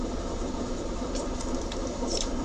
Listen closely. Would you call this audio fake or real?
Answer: fake